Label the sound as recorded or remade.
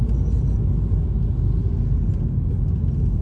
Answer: recorded